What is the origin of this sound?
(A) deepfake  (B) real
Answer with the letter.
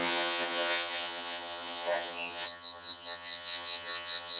A